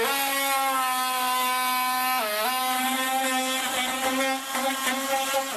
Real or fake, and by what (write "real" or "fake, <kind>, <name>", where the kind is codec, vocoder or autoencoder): real